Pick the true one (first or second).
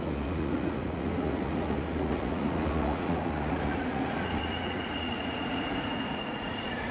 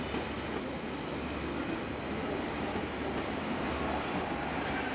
second